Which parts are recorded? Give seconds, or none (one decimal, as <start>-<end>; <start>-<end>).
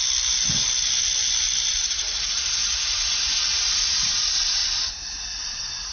0.0-5.9